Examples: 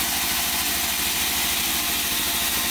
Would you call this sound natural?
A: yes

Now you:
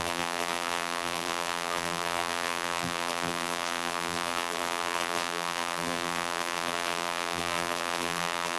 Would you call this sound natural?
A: no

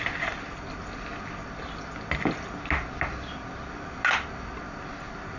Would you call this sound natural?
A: yes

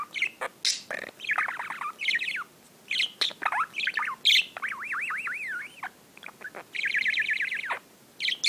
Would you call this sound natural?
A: yes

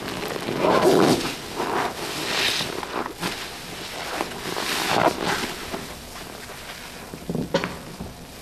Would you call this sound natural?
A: no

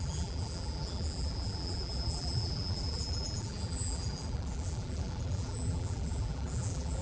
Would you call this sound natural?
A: no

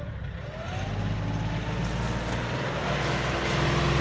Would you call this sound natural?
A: yes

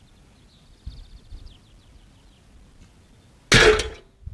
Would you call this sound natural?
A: yes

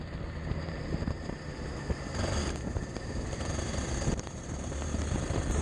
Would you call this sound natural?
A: no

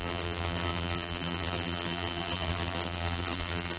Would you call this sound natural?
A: no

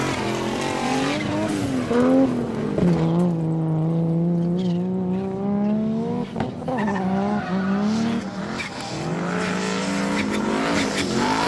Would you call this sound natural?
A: yes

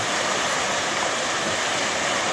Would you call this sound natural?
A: no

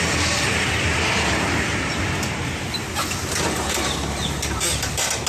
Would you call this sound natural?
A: no